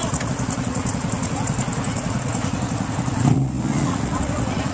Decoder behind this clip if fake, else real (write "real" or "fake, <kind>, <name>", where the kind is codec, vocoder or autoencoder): fake, vocoder, Vocos